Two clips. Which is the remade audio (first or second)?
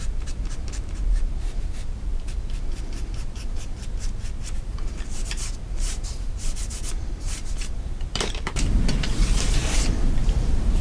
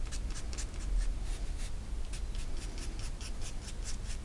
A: first